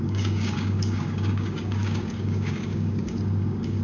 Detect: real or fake fake